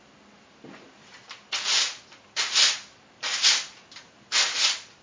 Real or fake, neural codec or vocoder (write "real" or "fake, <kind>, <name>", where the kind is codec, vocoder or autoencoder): real